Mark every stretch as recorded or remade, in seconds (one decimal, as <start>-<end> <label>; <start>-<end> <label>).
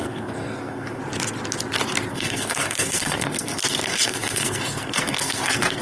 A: 0.0-1.0 remade; 1.0-2.1 recorded; 2.1-5.8 remade